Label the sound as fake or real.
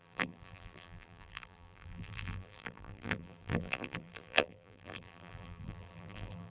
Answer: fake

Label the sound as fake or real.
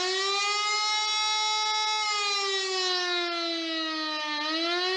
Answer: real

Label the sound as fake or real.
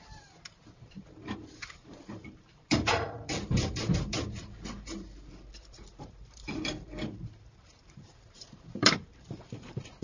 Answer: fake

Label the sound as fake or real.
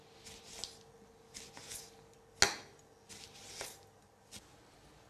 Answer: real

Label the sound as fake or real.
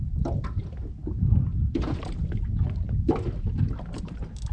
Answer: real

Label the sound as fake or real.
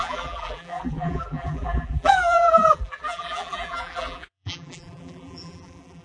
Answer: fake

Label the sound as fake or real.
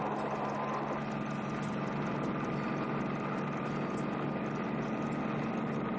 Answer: real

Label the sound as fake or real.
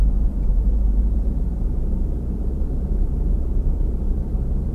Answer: fake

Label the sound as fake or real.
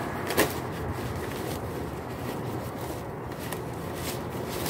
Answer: real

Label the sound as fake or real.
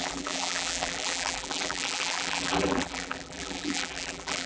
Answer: fake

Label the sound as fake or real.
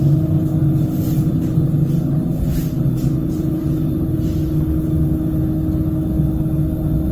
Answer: real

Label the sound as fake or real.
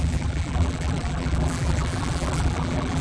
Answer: fake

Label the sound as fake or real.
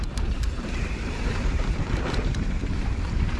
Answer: fake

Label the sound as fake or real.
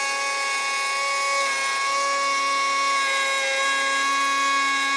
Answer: real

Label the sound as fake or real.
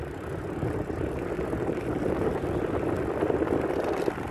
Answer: real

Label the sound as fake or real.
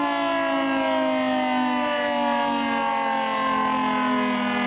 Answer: real